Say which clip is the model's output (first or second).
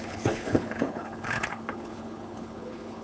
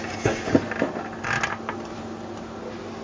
first